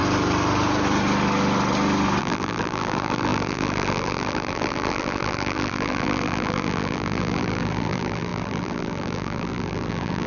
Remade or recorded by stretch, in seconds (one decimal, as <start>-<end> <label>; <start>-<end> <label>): 0.0-2.2 recorded; 2.2-10.3 remade